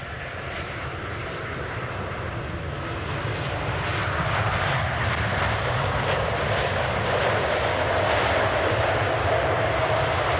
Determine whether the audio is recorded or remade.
recorded